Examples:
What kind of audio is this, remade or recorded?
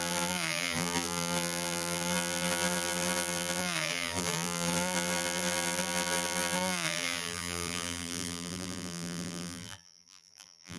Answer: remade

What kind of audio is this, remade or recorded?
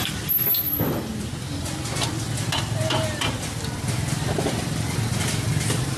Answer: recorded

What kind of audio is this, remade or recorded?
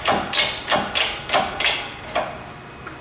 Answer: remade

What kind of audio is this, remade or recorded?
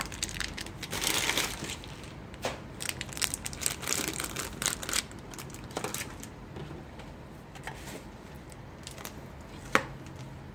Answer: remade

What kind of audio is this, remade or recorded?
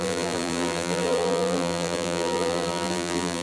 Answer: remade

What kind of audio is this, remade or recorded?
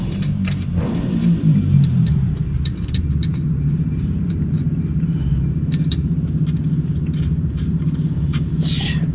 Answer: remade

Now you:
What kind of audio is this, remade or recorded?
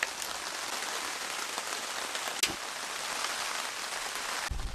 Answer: recorded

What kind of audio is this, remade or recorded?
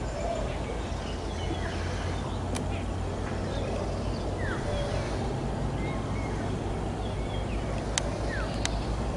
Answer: recorded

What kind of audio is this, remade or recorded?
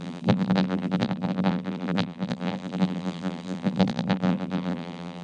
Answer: remade